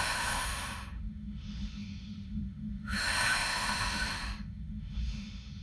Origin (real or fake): fake